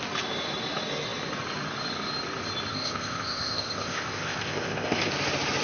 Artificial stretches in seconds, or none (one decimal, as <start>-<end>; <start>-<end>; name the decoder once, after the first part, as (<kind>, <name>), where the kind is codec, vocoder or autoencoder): 2.7-5.1 (codec, ZipCodec)